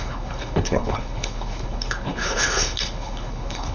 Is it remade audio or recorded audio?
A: remade